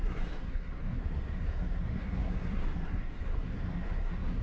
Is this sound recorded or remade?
remade